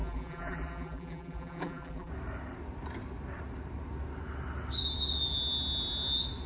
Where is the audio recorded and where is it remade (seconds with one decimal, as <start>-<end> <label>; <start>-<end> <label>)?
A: 0.0-2.1 remade; 2.1-6.5 recorded